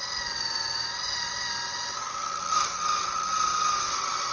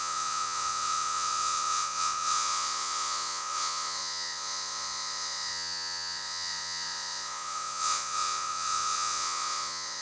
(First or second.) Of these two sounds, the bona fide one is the first